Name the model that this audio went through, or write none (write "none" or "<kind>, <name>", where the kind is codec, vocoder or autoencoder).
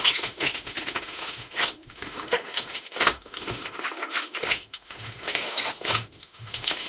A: autoencoder, DAC-VAE